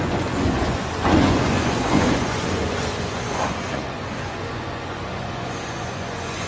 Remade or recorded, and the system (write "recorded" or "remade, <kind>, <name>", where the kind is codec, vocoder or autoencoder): remade, vocoder, Vocos